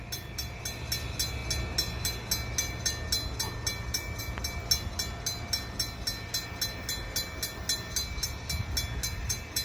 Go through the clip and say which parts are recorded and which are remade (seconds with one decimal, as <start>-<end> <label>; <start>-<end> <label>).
0.0-9.6 recorded